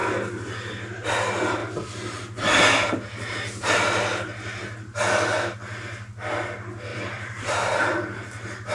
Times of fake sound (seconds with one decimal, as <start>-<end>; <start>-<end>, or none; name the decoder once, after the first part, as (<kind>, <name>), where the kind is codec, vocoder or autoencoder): 6.9-7.8 (vocoder, BigVGAN v2)